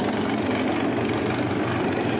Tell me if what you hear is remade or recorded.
recorded